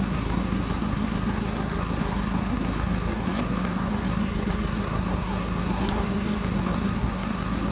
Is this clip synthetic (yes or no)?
yes